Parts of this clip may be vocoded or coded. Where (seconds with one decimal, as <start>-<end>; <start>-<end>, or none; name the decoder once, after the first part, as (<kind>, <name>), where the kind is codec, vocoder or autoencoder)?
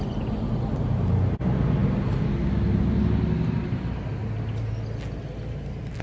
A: none